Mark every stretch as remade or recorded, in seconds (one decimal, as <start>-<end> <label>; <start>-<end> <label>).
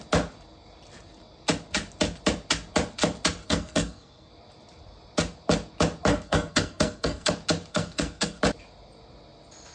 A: 0.0-3.4 recorded; 3.4-4.3 remade; 4.3-6.1 recorded; 6.1-7.3 remade; 7.3-7.7 recorded; 7.7-8.4 remade; 8.4-9.7 recorded